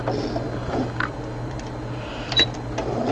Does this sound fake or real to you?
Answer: fake